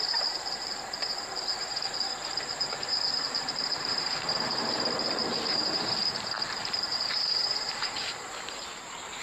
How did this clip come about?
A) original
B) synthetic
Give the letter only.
B